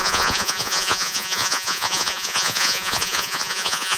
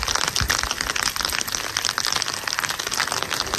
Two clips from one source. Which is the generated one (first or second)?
first